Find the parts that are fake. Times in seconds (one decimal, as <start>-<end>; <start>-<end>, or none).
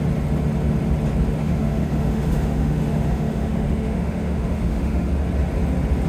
1.4-5.1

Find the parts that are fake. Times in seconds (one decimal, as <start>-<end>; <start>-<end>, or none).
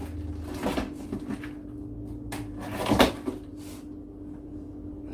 none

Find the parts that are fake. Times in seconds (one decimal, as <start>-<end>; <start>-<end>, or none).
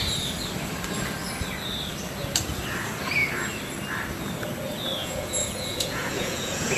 5.0-6.8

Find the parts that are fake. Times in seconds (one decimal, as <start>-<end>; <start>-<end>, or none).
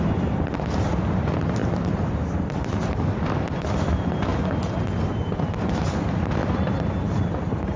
1.6-3.9; 6.4-7.8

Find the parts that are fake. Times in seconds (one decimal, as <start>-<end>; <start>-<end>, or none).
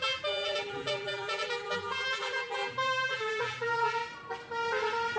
0.0-4.0